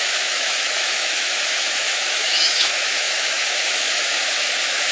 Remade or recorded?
remade